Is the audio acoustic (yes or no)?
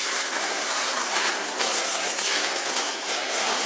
no